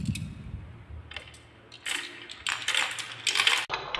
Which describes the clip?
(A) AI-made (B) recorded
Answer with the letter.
B